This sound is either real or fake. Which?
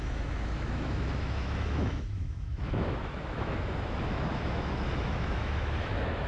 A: fake